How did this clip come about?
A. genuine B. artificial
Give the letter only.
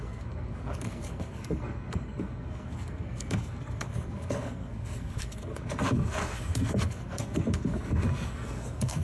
B